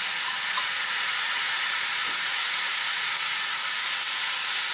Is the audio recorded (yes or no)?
no